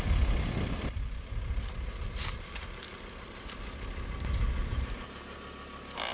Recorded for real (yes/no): yes